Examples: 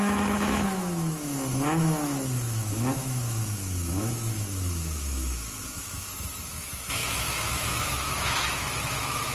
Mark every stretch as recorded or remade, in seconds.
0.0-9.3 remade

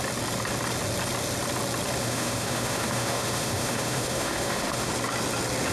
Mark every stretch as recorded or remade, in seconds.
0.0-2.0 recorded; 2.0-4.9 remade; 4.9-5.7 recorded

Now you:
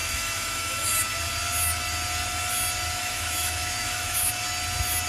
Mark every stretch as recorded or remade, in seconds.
0.0-0.9 remade; 0.9-3.0 recorded; 3.0-4.3 remade; 4.3-5.1 recorded

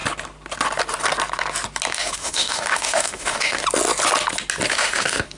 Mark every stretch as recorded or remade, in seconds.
0.0-1.9 recorded; 1.9-3.6 remade; 3.6-4.7 recorded; 4.7-5.4 remade